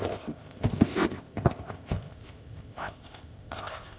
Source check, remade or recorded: remade